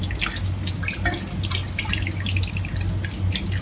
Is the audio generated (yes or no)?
no